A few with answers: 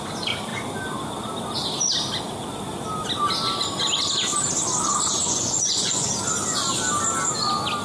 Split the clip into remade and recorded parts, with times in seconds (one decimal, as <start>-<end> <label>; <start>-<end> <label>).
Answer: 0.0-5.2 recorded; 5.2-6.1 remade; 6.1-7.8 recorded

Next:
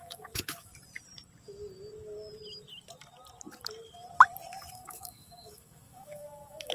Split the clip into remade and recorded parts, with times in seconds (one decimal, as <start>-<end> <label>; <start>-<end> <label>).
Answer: 0.0-0.7 remade; 0.7-4.7 recorded; 4.7-6.7 remade

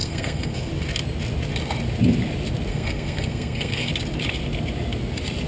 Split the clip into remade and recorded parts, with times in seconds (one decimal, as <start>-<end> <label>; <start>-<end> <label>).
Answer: 0.0-0.7 remade; 0.7-2.7 recorded; 2.7-3.9 remade; 3.9-5.5 recorded

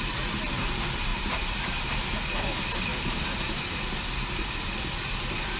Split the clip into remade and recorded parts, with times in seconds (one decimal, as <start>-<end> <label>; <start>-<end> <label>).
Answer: 0.0-1.1 recorded; 1.1-1.6 remade; 1.6-2.9 recorded; 2.9-3.6 remade; 3.6-5.6 recorded

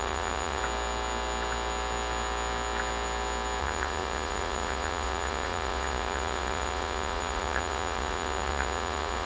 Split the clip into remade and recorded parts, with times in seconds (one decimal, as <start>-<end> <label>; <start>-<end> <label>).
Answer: 0.0-0.6 remade; 0.6-3.6 recorded; 3.6-9.3 remade